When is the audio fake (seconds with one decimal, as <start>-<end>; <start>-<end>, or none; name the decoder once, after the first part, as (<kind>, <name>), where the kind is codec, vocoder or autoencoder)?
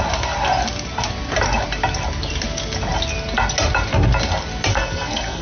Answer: 4.7-5.4 (codec, SNAC)